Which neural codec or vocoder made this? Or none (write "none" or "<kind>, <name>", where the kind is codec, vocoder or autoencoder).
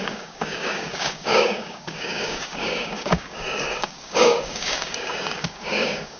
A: codec, DAC